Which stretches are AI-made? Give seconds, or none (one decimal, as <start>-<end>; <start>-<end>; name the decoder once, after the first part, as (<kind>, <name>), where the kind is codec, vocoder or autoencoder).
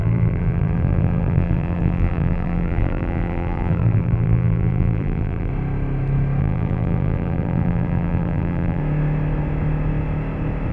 0.0-5.5 (vocoder, BigVGAN v2); 6.4-8.8